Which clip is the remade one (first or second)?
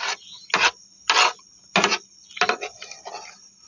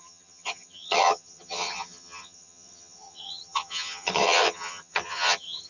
second